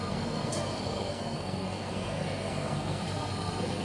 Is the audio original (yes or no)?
no